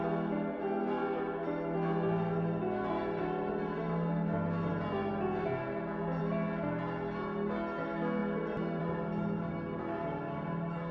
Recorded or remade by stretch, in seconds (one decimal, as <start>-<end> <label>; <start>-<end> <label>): 0.0-10.9 recorded